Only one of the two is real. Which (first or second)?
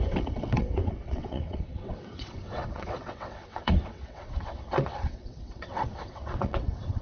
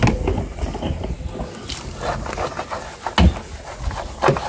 second